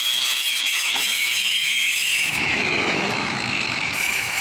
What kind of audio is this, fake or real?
fake